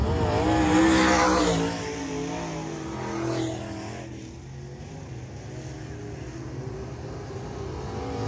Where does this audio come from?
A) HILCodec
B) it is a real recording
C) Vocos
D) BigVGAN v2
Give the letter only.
B